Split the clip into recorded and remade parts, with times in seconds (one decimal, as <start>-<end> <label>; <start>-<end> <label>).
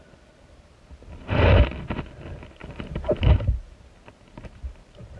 0.0-5.2 recorded